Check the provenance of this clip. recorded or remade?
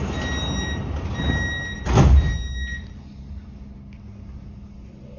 recorded